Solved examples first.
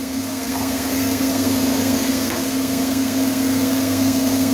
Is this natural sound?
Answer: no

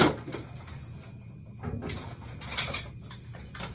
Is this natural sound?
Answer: yes